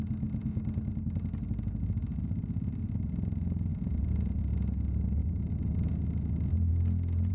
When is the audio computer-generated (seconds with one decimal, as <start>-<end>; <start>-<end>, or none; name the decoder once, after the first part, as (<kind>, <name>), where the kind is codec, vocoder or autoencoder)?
3.7-4.4 (vocoder, Vocos); 5.2-5.9; 6.7-7.3